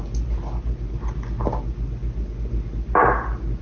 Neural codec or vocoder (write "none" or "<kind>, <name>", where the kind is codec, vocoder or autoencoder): none